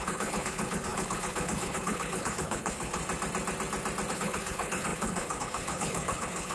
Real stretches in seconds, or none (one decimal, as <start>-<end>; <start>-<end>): 3.0-4.1